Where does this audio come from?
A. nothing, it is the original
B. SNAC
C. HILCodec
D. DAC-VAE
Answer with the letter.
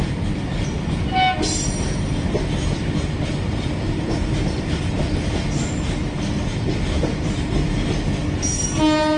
A